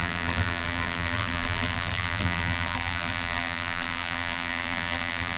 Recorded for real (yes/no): no